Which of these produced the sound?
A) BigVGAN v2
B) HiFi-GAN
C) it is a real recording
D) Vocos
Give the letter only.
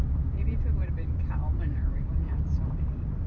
A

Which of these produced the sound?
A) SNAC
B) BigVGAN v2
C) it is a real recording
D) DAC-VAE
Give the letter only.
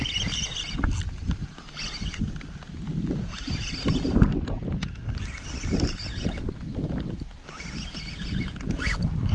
C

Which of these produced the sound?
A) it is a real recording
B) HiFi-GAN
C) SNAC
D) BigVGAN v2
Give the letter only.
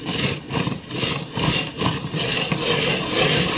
A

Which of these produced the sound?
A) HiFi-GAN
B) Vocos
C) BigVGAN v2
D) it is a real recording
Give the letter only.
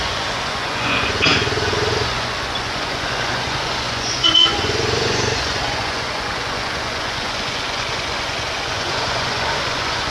B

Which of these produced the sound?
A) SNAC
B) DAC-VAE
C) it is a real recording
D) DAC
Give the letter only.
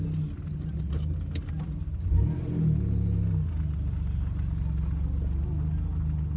C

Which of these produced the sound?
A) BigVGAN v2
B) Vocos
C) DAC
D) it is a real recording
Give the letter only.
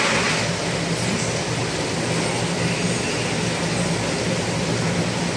D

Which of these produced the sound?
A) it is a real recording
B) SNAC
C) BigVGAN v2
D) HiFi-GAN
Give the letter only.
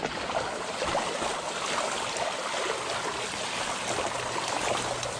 A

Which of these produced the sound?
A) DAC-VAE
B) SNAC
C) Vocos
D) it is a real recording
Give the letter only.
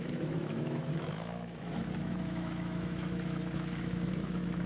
A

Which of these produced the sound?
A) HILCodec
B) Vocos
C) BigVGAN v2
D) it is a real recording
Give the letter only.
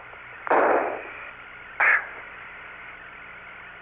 D